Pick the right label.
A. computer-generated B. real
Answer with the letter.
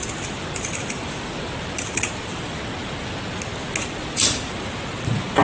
B